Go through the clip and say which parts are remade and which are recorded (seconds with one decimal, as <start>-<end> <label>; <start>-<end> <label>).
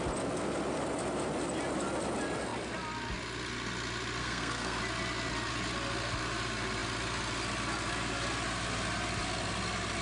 0.0-4.2 recorded; 4.2-4.8 remade; 4.8-10.0 recorded